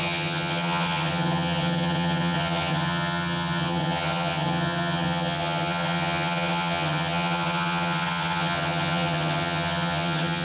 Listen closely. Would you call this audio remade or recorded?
remade